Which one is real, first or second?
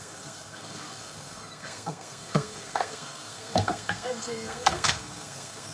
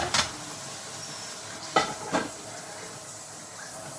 second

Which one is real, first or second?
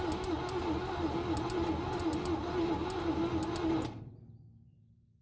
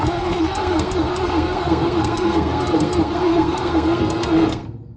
first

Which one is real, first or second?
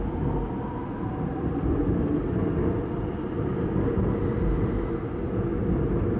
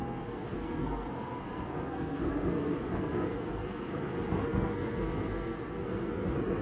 first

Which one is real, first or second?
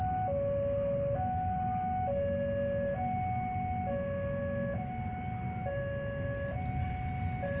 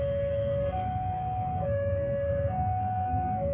first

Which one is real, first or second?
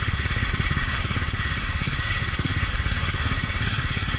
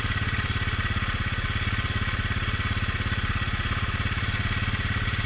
second